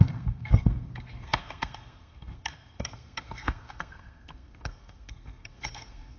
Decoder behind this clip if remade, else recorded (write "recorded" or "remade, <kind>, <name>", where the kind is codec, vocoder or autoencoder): remade, codec, SNAC